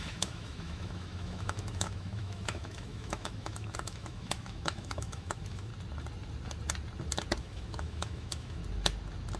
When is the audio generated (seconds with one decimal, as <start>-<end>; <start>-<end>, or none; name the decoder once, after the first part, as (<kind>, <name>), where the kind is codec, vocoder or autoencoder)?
0.0-5.7 (autoencoder, DAC-VAE); 7.4-8.6

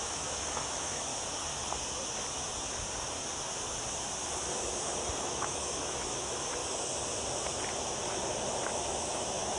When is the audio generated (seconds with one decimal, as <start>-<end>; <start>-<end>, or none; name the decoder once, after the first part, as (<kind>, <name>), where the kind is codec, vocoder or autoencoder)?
0.0-1.1 (autoencoder, DAC-VAE); 5.2-6.6; 8.7-9.6

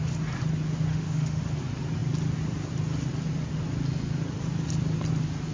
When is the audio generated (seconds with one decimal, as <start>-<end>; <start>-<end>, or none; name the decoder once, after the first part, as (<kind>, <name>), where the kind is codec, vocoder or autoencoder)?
0.9-1.4 (autoencoder, DAC-VAE)

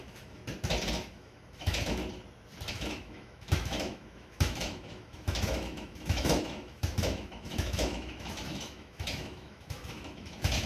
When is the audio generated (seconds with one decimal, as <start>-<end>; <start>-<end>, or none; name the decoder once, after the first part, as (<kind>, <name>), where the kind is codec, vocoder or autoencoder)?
0.0-0.4 (autoencoder, DAC-VAE); 1.1-2.0; 2.7-10.7